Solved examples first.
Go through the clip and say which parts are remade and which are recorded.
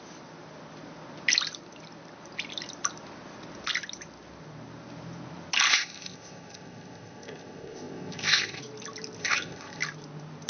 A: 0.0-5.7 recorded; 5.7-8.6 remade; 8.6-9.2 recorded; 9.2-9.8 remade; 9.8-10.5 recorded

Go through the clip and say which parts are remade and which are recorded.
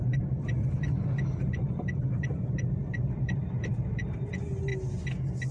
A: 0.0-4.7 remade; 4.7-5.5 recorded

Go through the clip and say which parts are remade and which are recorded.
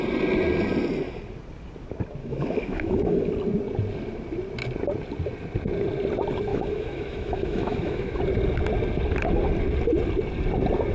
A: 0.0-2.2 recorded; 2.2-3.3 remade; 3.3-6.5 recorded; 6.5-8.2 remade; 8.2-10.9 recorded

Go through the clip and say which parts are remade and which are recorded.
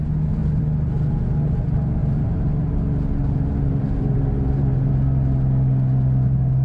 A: 0.0-2.0 recorded; 2.0-2.7 remade; 2.7-3.2 recorded; 3.2-4.9 remade; 4.9-6.6 recorded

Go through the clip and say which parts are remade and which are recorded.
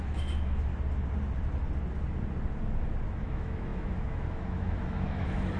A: 0.0-0.7 remade; 0.7-3.2 recorded; 3.2-5.6 remade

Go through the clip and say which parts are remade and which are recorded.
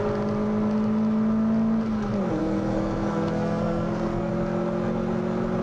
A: 0.0-2.4 recorded; 2.4-4.3 remade; 4.3-5.6 recorded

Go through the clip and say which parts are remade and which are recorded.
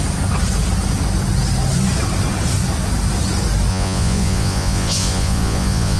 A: 0.0-3.7 recorded; 3.7-6.0 remade